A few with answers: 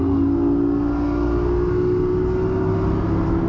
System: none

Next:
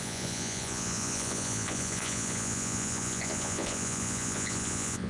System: vocoder, Vocos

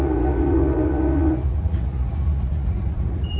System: vocoder, Vocos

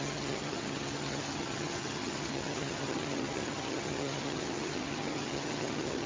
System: vocoder, HiFi-GAN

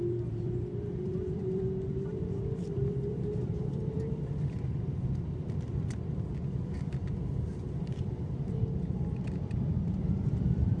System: vocoder, BigVGAN v2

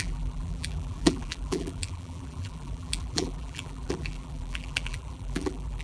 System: vocoder, BigVGAN v2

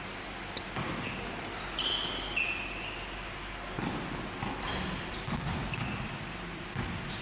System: none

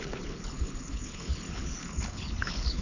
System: codec, HILCodec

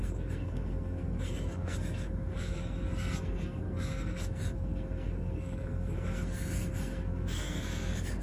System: codec, SNAC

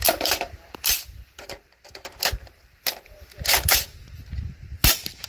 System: vocoder, BigVGAN v2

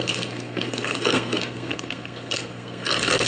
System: codec, SNAC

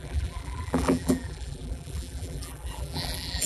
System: vocoder, BigVGAN v2